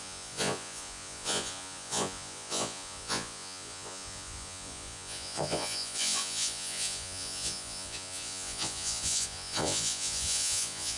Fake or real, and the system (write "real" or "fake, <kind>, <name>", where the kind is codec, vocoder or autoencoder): fake, vocoder, Vocos